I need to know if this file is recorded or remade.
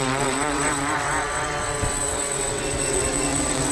remade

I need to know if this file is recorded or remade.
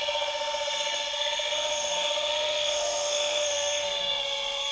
remade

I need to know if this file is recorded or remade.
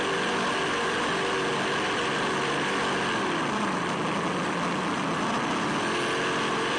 recorded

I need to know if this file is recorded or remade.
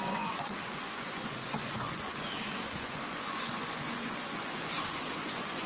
remade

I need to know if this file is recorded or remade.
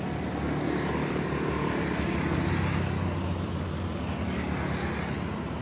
recorded